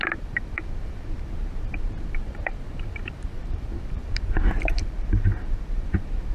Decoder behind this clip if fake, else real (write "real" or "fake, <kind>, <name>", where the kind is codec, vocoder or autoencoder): fake, vocoder, BigVGAN v2